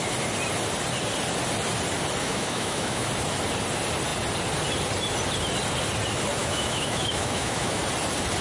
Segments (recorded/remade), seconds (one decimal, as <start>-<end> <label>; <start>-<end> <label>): 0.0-2.2 recorded; 2.2-3.1 remade; 3.1-6.4 recorded; 6.4-7.8 remade; 7.8-8.4 recorded